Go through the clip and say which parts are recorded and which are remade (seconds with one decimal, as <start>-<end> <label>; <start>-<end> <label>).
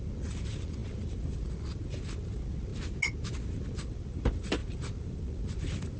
0.0-2.7 remade; 2.7-3.5 recorded; 3.5-6.0 remade